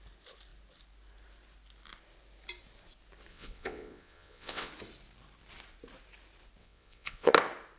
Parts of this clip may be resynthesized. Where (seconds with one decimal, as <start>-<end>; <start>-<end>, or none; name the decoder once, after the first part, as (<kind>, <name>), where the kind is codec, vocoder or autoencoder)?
3.3-4.7 (vocoder, WaveNeXt); 6.6-7.3